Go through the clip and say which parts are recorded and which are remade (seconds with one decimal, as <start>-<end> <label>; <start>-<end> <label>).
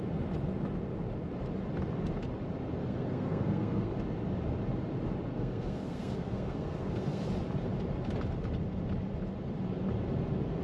0.0-2.8 recorded; 2.8-3.9 remade; 3.9-5.3 recorded; 5.3-7.2 remade; 7.2-10.6 recorded